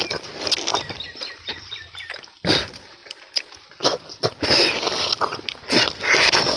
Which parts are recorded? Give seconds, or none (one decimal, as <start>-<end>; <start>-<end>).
0.0-6.6